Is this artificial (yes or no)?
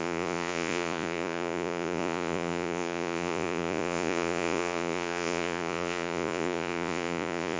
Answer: yes